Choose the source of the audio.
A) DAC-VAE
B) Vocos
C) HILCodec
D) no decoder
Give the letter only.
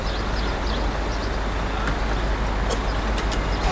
D